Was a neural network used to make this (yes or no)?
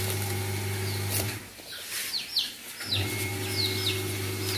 no